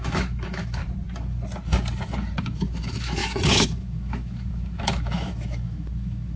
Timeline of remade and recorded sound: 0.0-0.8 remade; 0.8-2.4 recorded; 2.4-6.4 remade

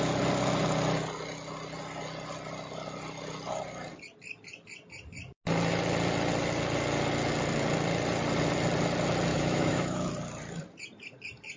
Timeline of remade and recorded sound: 0.0-9.3 recorded; 9.3-10.1 remade; 10.1-11.6 recorded